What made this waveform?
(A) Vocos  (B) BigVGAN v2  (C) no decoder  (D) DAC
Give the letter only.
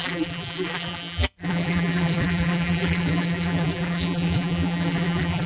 B